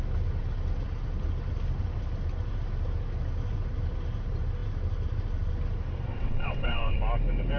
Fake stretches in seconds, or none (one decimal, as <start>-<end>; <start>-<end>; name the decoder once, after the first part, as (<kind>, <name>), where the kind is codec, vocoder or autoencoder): 6.1-7.0 (vocoder, WaveNeXt)